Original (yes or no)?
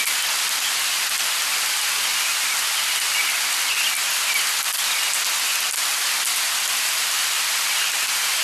yes